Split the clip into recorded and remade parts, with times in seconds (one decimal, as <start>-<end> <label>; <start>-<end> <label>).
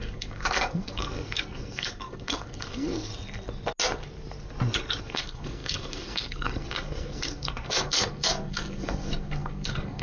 0.0-3.1 remade; 3.1-5.0 recorded; 5.0-10.0 remade